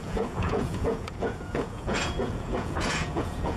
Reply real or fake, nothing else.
fake